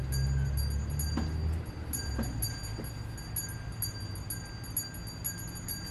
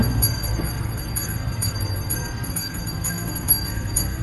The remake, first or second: second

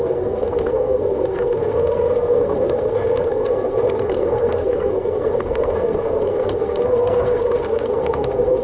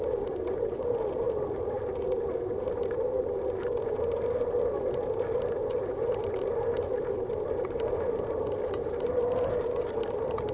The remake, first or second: first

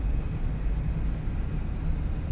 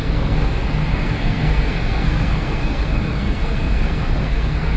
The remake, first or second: second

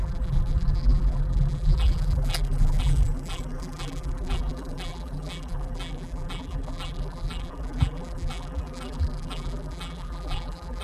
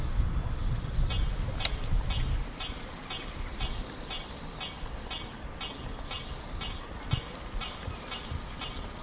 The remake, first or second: first